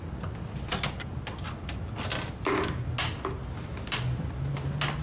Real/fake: real